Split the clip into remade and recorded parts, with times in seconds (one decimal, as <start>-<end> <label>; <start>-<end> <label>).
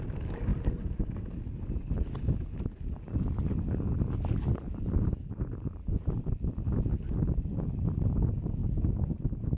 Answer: 0.0-5.2 recorded; 5.2-6.2 remade; 6.2-8.6 recorded; 8.6-9.6 remade